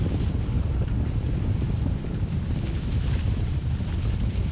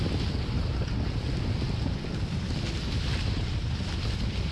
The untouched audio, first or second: second